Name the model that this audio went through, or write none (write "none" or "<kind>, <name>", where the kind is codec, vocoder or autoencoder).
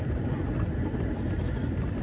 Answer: none